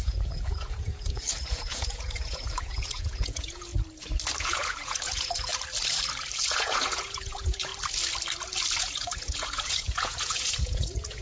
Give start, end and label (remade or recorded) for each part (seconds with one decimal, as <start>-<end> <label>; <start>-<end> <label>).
0.0-3.7 remade; 3.7-4.4 recorded; 4.4-5.5 remade; 5.5-6.4 recorded; 6.4-7.7 remade; 7.7-8.8 recorded; 8.8-11.2 remade